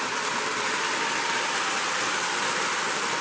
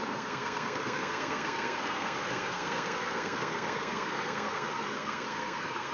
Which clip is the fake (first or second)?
second